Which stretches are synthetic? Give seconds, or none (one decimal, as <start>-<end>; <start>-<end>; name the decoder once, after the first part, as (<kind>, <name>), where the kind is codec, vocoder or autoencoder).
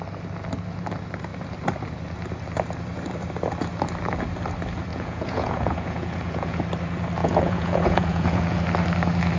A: 4.9-6.6 (vocoder, Vocos); 7.2-8.6